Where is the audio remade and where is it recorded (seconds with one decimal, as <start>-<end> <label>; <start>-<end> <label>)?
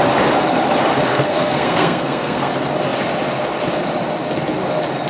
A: 0.0-1.1 recorded; 1.1-2.5 remade; 2.5-5.1 recorded